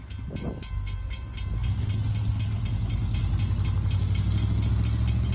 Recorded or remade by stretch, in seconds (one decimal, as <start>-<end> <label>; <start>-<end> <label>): 0.0-5.3 recorded